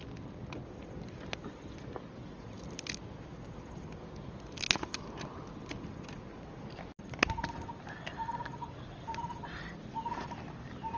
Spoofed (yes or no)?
no